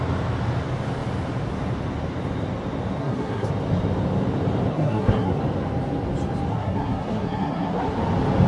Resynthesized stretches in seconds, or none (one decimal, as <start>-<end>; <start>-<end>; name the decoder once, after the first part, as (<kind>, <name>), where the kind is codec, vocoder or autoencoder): 3.0-3.5 (codec, SNAC); 4.7-5.4; 6.5-8.0